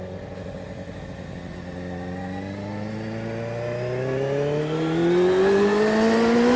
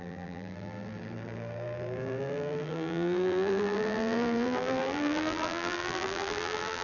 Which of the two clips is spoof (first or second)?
second